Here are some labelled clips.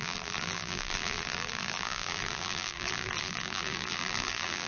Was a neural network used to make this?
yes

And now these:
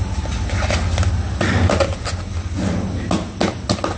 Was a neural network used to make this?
no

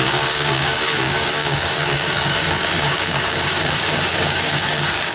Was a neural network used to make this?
yes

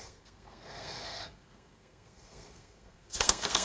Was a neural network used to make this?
yes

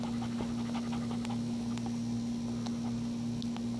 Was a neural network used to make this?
no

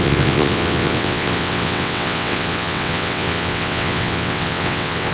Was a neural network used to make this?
yes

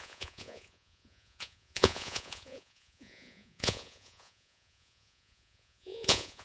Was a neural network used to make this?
yes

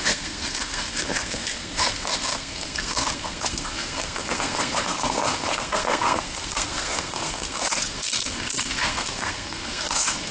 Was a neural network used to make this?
yes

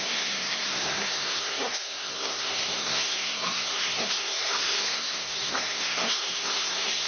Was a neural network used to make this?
yes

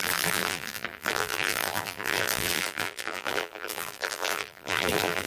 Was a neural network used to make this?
yes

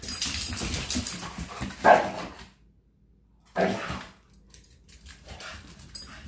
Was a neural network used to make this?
no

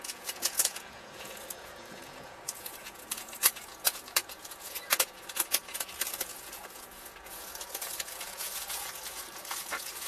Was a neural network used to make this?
yes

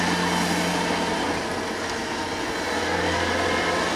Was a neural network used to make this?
no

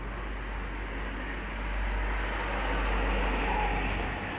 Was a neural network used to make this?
no